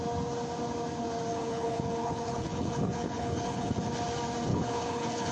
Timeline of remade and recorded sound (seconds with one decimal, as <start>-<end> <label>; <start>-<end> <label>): 0.0-1.3 recorded; 1.3-3.9 remade; 3.9-4.5 recorded; 4.5-5.3 remade